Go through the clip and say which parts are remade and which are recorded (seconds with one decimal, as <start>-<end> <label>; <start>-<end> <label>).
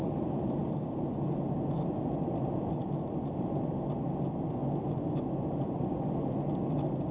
0.0-7.1 recorded